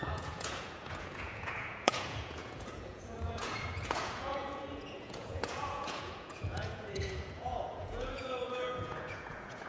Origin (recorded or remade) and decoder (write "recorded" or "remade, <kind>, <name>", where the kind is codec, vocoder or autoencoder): remade, vocoder, Vocos